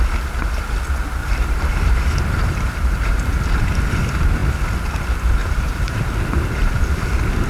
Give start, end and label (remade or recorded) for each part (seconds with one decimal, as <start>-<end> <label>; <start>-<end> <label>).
0.0-1.2 recorded; 1.2-2.7 remade; 2.7-5.4 recorded; 5.4-6.0 remade; 6.0-7.5 recorded